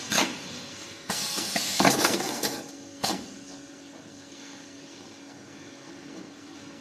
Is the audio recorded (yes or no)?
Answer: no